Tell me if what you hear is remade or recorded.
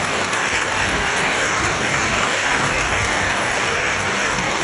remade